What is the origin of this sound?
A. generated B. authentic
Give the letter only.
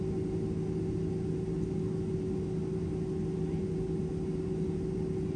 B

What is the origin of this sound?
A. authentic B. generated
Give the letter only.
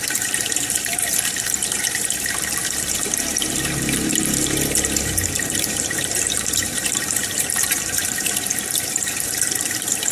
B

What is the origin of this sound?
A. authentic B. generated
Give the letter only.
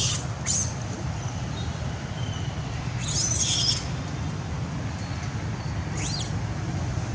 A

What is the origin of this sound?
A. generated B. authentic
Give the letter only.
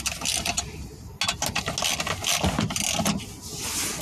B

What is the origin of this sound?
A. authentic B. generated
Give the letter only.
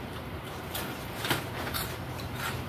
B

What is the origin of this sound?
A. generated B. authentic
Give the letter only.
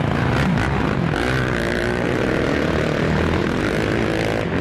B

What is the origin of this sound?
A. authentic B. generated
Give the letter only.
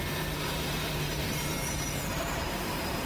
B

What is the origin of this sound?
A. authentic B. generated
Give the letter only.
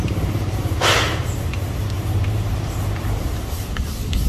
B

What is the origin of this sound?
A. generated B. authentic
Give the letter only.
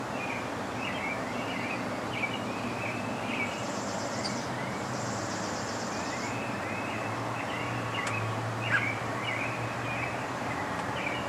A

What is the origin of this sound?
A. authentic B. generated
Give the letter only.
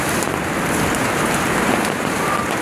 B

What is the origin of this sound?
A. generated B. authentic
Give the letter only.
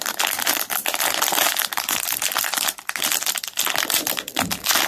B